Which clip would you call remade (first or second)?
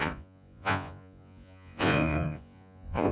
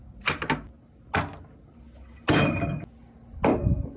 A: first